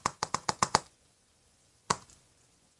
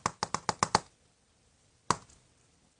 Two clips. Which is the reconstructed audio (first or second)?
first